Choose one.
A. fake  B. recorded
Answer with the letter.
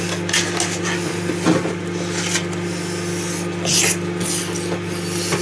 B